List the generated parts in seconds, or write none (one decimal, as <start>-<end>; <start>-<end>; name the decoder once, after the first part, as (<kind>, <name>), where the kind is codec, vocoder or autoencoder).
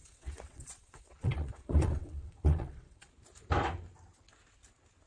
0.0-3.1 (vocoder, WaveNeXt)